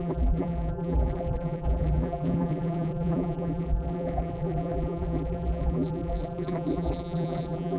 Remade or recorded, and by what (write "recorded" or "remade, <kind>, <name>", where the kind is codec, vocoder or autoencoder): remade, vocoder, BigVGAN v2